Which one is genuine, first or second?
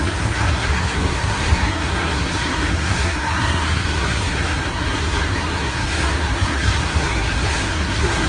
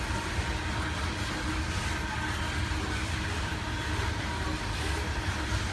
second